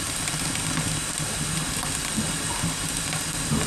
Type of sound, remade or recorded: recorded